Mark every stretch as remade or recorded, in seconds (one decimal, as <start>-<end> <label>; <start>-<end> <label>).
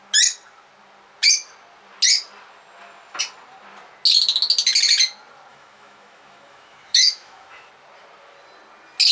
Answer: 0.0-5.5 recorded; 5.5-7.7 remade; 7.7-9.1 recorded